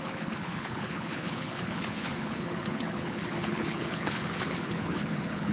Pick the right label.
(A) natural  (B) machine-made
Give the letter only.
B